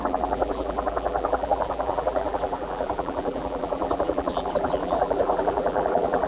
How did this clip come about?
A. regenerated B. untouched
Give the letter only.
A